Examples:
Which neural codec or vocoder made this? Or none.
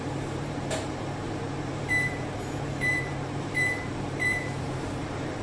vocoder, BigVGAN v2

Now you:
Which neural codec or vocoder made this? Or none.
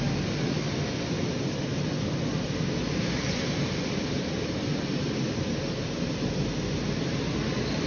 none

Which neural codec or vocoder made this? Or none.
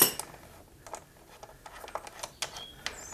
none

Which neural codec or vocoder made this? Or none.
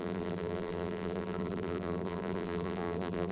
vocoder, BigVGAN v2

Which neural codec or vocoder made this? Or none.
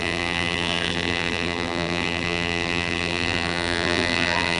vocoder, BigVGAN v2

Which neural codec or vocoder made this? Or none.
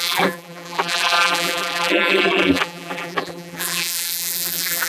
vocoder, BigVGAN v2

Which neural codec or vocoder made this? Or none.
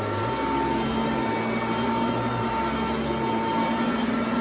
none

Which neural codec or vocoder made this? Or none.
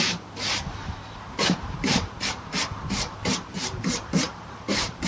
vocoder, BigVGAN v2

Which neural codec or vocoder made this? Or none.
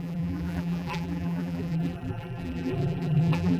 vocoder, BigVGAN v2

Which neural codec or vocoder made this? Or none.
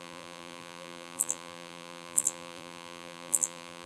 vocoder, BigVGAN v2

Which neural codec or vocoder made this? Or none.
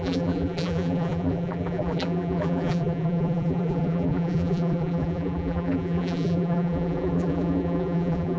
vocoder, BigVGAN v2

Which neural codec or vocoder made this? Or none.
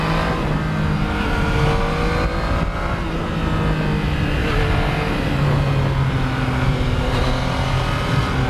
none